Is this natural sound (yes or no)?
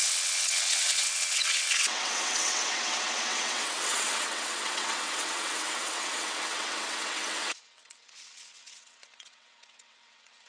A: no